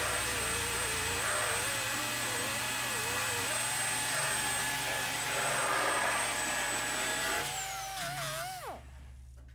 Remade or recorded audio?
recorded